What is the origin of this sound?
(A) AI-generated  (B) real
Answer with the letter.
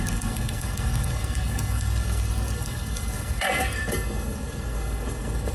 A